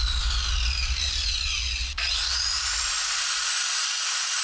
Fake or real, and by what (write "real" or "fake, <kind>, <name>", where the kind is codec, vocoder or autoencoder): real